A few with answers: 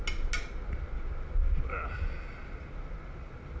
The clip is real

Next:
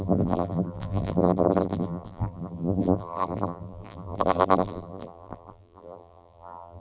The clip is fake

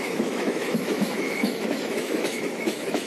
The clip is fake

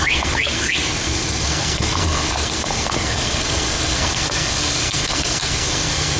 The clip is fake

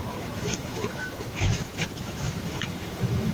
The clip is fake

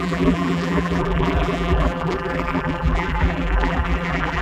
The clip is fake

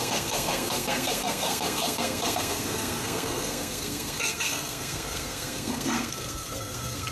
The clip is fake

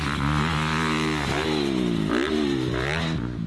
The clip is real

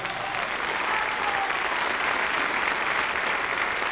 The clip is real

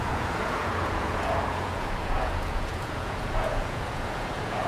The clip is fake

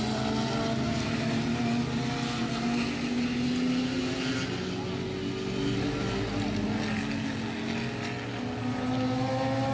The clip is real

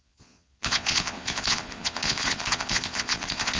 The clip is fake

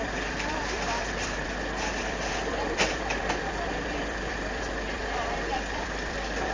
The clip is fake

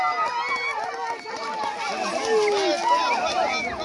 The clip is real